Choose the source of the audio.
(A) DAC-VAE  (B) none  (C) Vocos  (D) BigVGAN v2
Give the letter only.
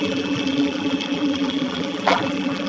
D